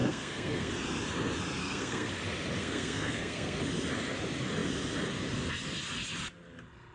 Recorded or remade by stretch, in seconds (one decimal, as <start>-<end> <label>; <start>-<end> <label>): 0.0-0.7 remade; 0.7-1.6 recorded; 1.6-2.1 remade; 2.1-2.6 recorded; 2.6-3.6 remade; 3.6-6.9 recorded